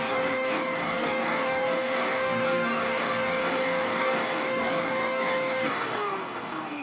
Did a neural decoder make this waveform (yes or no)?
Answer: yes